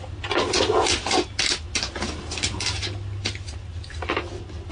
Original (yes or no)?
yes